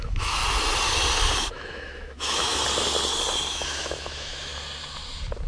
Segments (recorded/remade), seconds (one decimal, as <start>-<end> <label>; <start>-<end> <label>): 0.0-0.4 remade; 0.4-1.5 recorded; 1.5-2.5 remade; 2.5-3.5 recorded; 3.5-4.5 remade; 4.5-5.5 recorded